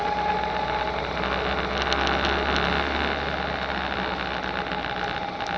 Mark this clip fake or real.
real